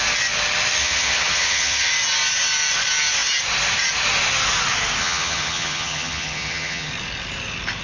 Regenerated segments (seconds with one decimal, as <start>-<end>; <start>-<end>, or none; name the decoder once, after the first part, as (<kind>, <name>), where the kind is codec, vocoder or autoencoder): 0.8-1.9 (vocoder, HiFi-GAN); 5.0-6.9